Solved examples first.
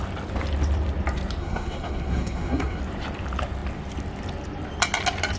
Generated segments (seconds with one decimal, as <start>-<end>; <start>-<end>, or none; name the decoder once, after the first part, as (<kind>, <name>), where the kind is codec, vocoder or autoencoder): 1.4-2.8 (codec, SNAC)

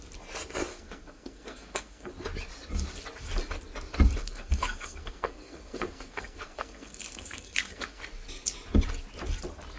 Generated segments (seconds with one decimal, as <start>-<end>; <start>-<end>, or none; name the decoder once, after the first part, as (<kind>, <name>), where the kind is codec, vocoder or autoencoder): 0.7-2.1 (codec, SNAC); 4.2-8.0

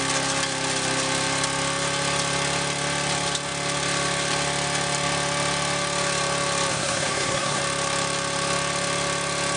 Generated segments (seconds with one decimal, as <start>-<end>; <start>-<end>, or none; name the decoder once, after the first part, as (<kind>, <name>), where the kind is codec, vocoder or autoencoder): 6.7-7.6 (codec, SNAC)

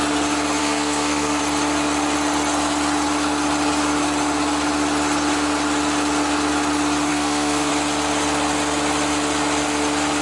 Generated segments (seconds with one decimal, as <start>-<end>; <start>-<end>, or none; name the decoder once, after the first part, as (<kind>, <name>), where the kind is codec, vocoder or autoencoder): 0.6-1.4 (codec, SNAC); 7.1-7.7

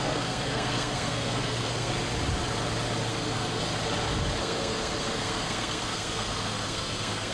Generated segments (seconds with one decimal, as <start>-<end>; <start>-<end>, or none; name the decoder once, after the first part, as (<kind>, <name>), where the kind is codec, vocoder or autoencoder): 0.0-1.9 (codec, SNAC); 3.1-3.6; 4.4-7.3